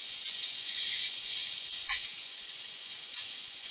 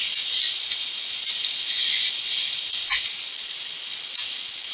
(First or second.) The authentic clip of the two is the second